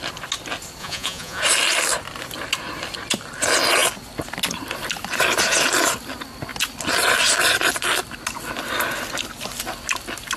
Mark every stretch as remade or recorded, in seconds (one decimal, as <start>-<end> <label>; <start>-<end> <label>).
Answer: 0.0-0.8 recorded; 0.8-1.4 remade; 1.4-10.4 recorded